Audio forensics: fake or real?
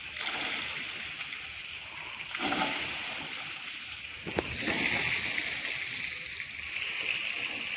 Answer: real